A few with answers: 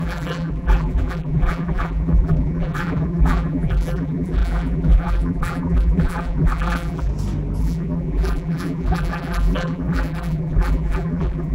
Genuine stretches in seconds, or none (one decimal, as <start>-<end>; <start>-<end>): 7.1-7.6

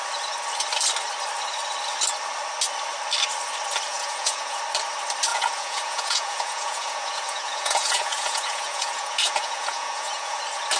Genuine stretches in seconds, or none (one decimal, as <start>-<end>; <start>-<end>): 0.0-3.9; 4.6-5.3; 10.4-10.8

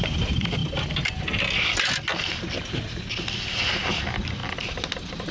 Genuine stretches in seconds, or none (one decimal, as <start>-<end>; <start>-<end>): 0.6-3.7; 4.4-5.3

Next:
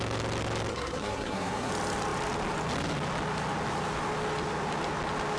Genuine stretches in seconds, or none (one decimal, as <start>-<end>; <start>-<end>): 0.0-0.7; 1.7-5.4